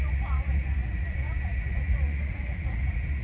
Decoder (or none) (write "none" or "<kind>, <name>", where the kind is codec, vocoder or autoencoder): vocoder, Vocos